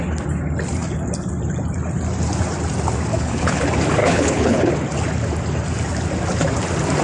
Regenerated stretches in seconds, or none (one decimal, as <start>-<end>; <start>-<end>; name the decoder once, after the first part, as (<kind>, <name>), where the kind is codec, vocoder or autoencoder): 3.1-3.6 (codec, HILCodec); 4.0-4.7